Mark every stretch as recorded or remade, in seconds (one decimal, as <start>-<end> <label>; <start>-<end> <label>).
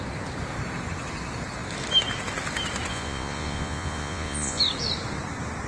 0.0-2.9 recorded; 2.9-4.6 remade; 4.6-5.7 recorded